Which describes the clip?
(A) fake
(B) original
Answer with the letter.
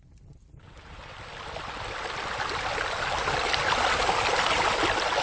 B